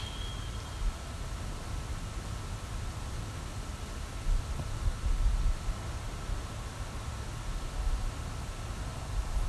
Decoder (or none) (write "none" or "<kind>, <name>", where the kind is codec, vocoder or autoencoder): none